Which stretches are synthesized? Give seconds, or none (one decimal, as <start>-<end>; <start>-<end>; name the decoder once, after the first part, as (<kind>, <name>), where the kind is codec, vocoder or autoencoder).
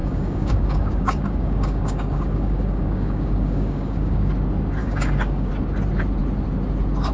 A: 0.0-4.3 (codec, DAC); 4.8-5.5